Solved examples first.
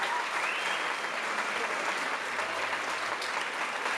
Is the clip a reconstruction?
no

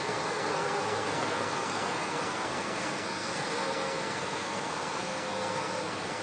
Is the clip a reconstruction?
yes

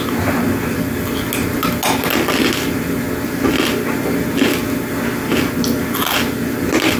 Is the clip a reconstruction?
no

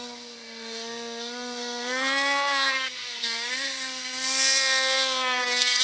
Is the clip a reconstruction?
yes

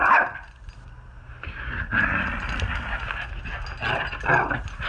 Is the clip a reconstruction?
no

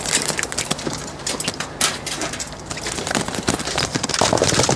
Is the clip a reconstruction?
yes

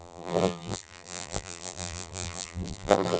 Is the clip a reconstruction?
yes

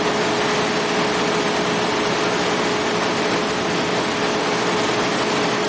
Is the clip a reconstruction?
no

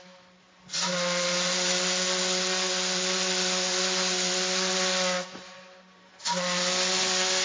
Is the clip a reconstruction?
no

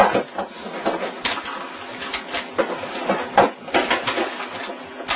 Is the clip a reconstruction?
no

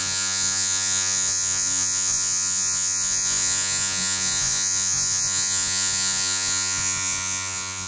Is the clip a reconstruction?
yes